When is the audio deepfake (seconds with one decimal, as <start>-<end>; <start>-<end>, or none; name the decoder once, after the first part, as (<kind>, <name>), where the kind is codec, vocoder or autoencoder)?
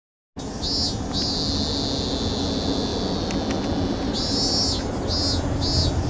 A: none